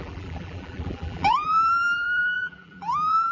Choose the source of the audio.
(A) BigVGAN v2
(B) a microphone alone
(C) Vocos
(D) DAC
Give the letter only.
A